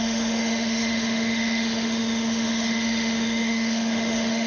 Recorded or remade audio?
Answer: remade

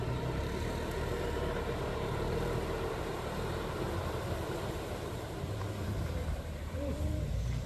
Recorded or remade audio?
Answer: remade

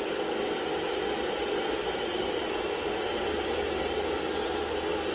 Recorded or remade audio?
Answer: recorded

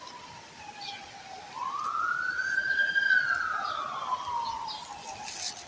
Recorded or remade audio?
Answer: recorded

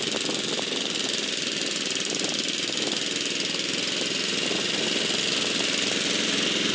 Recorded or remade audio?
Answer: recorded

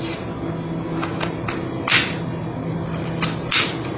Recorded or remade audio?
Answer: recorded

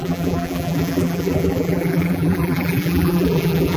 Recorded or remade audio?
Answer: remade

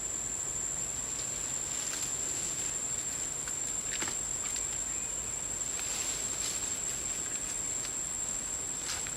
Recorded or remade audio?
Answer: recorded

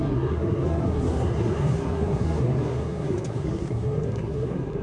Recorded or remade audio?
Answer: remade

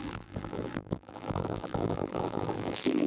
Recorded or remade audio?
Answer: remade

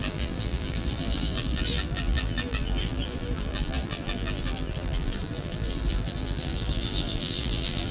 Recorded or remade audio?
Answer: remade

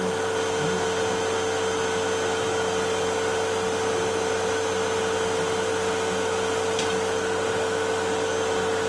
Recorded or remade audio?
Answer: recorded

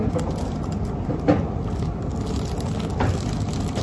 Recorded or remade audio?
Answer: recorded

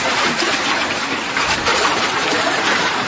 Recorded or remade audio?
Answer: recorded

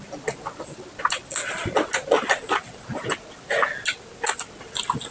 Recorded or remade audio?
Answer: recorded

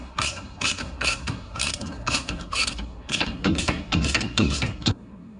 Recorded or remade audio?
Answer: remade